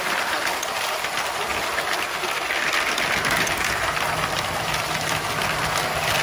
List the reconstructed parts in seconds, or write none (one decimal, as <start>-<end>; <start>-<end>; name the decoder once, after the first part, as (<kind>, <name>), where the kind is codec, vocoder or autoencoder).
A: none